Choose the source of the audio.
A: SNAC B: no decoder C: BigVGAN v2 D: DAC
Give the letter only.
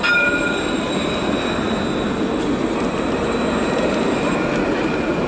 B